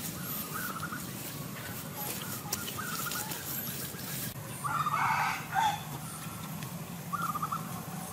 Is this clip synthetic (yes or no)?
no